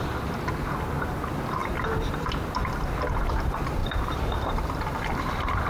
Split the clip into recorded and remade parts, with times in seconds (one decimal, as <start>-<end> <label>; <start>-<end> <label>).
0.0-3.8 recorded; 3.8-5.3 remade; 5.3-5.7 recorded